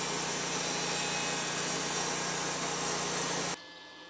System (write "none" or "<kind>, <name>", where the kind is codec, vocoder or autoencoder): none